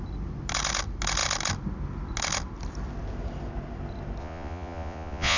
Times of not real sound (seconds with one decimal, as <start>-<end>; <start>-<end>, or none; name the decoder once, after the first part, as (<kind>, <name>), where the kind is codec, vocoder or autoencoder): 4.2-5.4 (vocoder, Vocos)